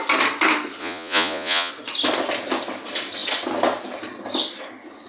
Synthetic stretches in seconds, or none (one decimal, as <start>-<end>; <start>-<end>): 0.8-1.7